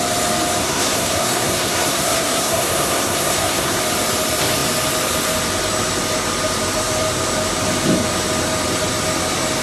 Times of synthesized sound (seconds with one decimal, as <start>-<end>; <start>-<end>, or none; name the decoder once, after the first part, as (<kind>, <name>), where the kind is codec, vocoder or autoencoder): 0.6-3.8 (codec, SNAC)